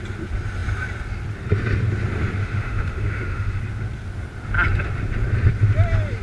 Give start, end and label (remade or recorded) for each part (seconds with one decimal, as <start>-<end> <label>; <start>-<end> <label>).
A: 0.0-2.4 recorded; 2.4-3.6 remade; 3.6-6.2 recorded